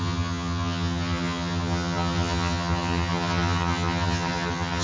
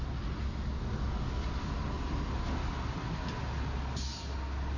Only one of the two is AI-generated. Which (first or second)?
first